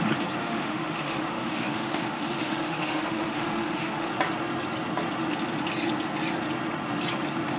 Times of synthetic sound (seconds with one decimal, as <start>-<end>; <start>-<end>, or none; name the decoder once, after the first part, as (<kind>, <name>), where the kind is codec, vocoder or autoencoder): 0.4-4.1 (autoencoder, DAC-VAE)